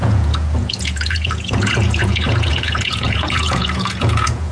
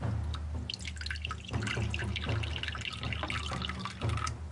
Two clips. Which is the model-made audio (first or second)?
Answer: first